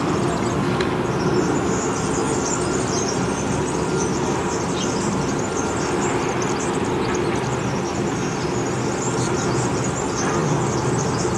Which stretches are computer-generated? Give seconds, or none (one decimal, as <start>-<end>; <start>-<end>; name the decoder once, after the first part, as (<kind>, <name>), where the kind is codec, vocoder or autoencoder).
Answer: 7.5-8.5 (vocoder, BigVGAN v2); 10.4-11.4